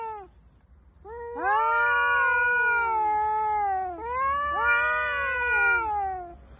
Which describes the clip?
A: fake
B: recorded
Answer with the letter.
B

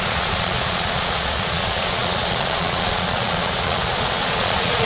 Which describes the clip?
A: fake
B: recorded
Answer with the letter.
A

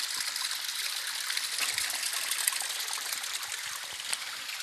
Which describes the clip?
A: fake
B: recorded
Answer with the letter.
B